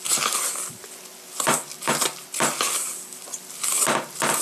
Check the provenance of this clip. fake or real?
real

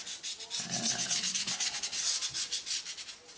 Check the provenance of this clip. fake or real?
real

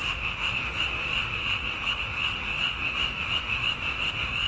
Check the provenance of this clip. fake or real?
fake